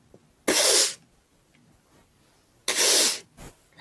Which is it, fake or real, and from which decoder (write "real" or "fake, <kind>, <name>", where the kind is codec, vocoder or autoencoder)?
real